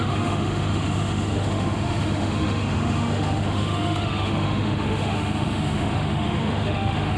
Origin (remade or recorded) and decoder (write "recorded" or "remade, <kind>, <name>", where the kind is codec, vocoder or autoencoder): remade, autoencoder, DAC-VAE